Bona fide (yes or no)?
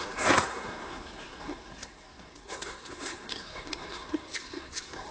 no